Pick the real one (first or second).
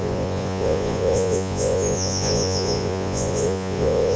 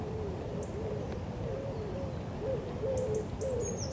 second